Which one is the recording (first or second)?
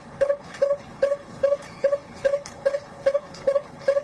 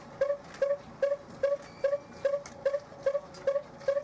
second